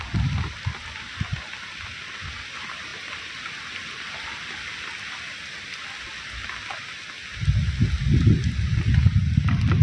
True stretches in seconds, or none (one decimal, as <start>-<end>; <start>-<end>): 0.0-9.8